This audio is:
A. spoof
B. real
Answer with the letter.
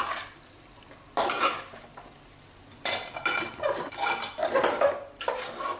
B